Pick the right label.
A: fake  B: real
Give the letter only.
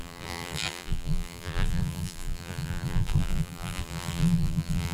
A